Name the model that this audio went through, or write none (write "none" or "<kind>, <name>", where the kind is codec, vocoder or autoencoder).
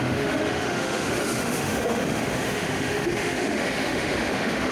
autoencoder, DAC-VAE